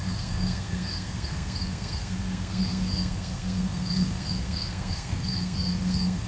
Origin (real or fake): fake